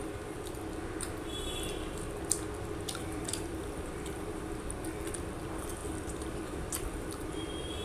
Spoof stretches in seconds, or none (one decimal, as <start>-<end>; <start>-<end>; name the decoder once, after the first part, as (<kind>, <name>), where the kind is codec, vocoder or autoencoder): 3.0-7.8 (vocoder, BigVGAN v2)